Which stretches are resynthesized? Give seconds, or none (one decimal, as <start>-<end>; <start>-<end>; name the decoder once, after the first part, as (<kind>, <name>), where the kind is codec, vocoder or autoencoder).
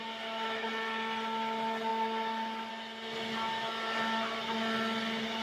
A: none